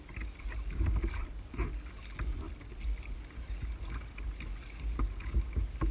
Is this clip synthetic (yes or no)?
no